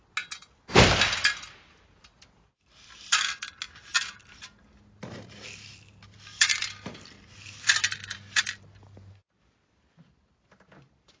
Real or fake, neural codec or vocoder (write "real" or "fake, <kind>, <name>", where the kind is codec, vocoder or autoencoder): real